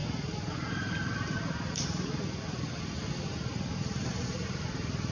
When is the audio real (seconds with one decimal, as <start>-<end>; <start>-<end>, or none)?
0.0-3.1; 3.7-4.3